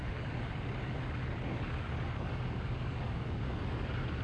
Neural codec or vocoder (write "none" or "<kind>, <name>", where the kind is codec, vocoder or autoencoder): codec, DAC